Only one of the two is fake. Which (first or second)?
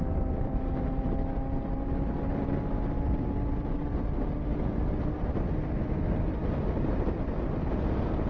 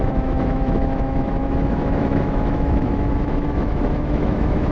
second